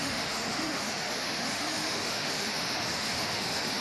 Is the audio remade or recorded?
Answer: remade